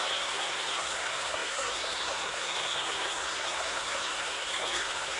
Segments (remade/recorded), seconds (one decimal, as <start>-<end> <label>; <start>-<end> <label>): 0.0-5.2 remade